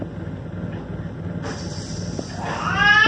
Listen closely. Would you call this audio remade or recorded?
recorded